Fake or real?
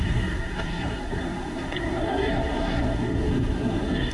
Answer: fake